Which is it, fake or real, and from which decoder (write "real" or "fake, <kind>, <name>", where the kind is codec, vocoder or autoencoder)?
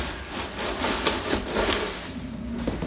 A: real